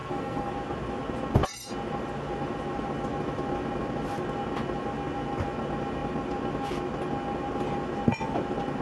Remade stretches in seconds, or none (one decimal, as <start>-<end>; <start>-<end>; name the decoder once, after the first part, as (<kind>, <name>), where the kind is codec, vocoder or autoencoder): 0.0-0.5 (codec, SNAC)